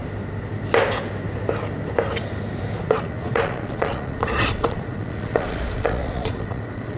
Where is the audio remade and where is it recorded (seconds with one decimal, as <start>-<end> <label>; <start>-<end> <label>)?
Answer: 0.0-2.9 recorded; 2.9-7.0 remade